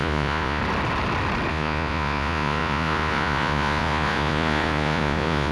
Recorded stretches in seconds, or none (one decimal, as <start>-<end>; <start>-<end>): 0.6-1.5